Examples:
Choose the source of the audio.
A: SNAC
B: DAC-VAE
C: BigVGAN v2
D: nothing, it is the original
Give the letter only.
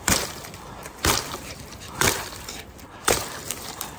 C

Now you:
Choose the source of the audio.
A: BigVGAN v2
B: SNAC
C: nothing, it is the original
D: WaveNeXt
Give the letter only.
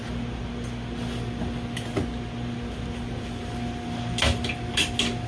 C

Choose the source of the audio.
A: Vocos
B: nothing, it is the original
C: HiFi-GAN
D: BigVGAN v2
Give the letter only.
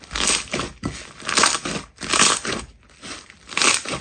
B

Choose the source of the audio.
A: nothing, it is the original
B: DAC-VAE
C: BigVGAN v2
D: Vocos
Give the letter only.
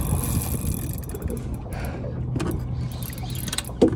A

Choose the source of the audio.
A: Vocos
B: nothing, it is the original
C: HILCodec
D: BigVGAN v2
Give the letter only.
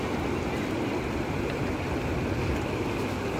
B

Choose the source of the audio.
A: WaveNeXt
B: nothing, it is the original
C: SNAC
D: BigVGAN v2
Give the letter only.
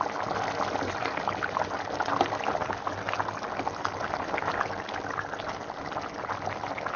B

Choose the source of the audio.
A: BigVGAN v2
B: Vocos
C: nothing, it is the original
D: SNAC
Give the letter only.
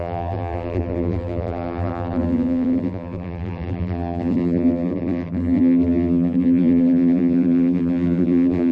A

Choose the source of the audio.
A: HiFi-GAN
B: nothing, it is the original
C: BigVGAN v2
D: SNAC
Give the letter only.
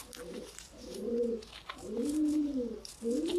B